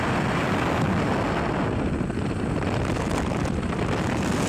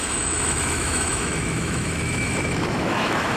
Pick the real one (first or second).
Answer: first